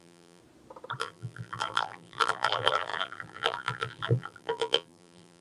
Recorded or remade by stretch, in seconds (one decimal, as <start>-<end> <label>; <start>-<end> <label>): 0.0-0.4 remade; 0.4-1.0 recorded; 1.0-5.4 remade